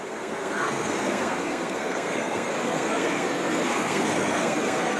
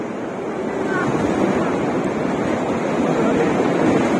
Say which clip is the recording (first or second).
second